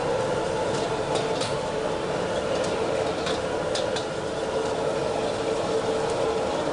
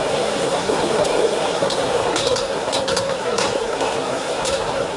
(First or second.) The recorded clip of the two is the first